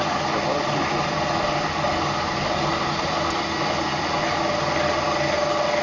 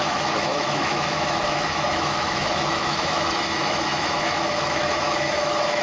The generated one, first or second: second